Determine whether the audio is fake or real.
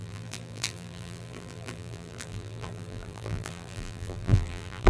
fake